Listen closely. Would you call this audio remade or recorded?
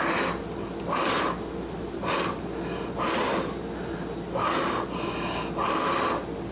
recorded